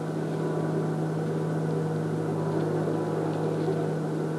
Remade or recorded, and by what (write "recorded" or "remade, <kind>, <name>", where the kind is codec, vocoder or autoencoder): recorded